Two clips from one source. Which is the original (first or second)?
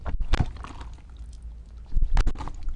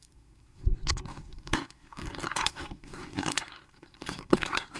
first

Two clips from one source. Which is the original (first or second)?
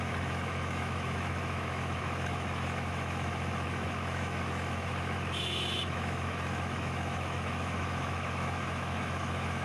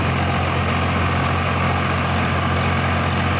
second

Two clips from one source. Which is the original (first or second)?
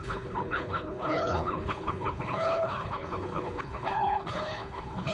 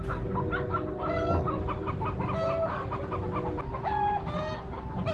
second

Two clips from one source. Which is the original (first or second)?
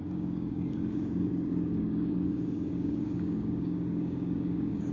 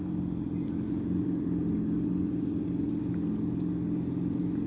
second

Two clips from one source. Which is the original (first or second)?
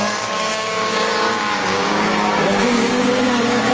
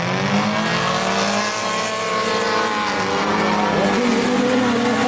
second